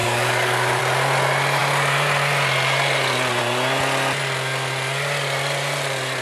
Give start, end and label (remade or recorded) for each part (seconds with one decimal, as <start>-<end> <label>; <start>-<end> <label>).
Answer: 0.0-0.8 remade; 0.8-6.2 recorded